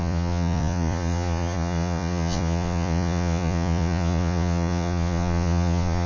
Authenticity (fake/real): fake